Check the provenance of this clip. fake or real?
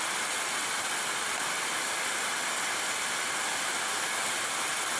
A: real